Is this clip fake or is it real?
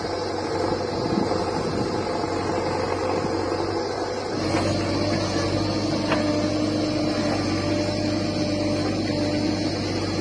real